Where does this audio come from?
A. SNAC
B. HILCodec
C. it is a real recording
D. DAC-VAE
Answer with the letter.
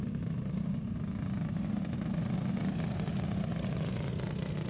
C